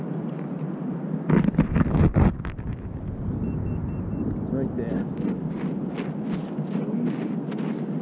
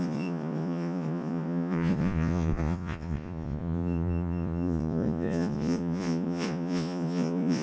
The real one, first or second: first